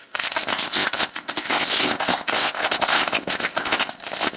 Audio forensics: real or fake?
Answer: fake